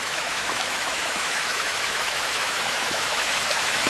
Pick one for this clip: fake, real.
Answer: fake